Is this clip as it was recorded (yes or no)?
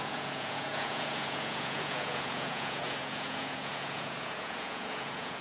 no